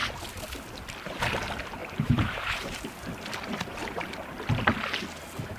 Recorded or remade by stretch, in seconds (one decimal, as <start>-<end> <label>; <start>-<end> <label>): 0.0-1.8 recorded; 1.8-3.0 remade; 3.0-3.8 recorded; 3.8-4.7 remade; 4.7-5.6 recorded